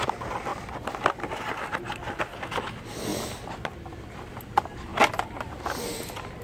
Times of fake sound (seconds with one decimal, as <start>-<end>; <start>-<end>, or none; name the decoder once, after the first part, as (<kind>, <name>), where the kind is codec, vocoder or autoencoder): none